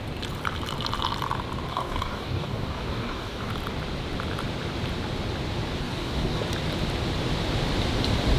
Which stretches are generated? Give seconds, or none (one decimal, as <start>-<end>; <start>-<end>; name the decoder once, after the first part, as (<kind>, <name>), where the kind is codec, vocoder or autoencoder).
1.7-3.5 (codec, DAC); 5.8-6.4